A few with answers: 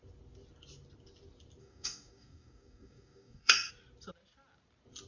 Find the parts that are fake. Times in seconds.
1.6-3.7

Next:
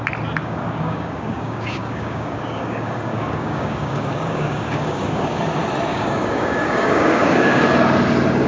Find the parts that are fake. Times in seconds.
0.4-5.4; 5.9-7.6

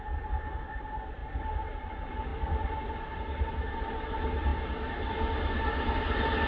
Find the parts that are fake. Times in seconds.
none

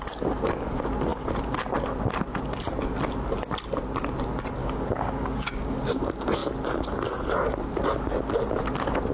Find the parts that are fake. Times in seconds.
4.6-6.0

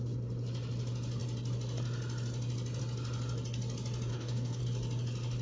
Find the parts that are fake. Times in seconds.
4.1-4.6

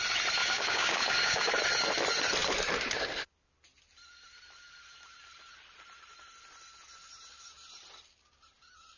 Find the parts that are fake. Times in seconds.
0.4-1.5

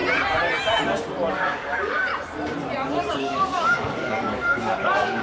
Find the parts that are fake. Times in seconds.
1.3-2.1; 3.1-5.2